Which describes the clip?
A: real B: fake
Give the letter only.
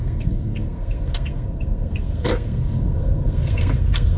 B